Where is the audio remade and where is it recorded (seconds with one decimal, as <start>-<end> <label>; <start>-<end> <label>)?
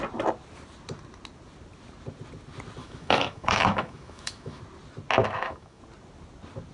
0.0-2.8 recorded; 2.8-4.6 remade; 4.6-5.2 recorded; 5.2-5.8 remade; 5.8-6.7 recorded